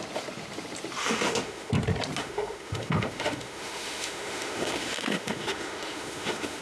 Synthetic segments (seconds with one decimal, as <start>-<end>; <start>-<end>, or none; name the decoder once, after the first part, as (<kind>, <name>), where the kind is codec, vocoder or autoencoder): 1.0-1.7 (autoencoder, DAC-VAE); 2.2-6.6